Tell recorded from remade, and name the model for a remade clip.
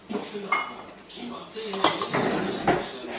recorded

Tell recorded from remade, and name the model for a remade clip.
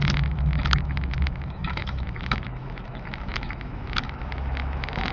remade, autoencoder, DAC-VAE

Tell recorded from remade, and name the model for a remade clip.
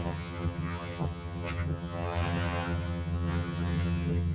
remade, vocoder, HiFi-GAN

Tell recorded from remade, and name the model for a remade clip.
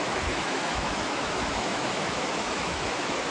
remade, autoencoder, DAC-VAE